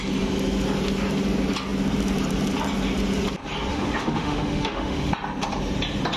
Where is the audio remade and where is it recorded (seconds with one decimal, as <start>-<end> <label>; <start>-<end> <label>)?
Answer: 0.0-3.7 recorded; 3.7-5.1 remade; 5.1-6.2 recorded

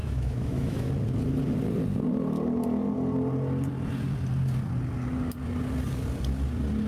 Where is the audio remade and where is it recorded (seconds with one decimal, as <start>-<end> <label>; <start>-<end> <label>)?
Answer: 0.0-0.9 remade; 0.9-6.9 recorded

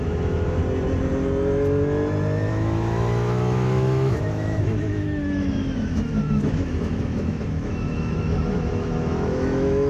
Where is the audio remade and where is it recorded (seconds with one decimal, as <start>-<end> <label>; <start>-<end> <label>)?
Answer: 0.0-0.6 remade; 0.6-2.5 recorded; 2.5-9.9 remade

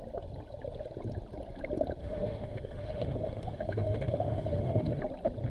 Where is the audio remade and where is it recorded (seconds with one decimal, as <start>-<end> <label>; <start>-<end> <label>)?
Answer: 0.0-2.0 recorded; 2.0-5.0 remade; 5.0-5.5 recorded

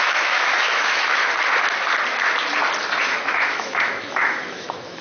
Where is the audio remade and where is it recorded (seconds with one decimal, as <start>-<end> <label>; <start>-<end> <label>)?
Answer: 0.0-1.2 remade; 1.2-3.0 recorded; 3.0-5.0 remade

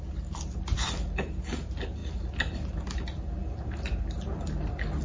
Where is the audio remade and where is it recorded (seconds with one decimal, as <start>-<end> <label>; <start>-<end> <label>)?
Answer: 0.0-5.0 recorded

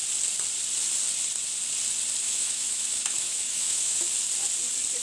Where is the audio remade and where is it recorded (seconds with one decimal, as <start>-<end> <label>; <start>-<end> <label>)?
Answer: 0.0-2.2 recorded; 2.2-4.0 remade; 4.0-5.0 recorded